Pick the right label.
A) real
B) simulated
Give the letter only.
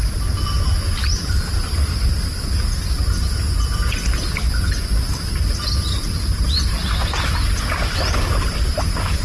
A